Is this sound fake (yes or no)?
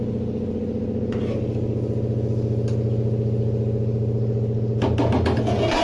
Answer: no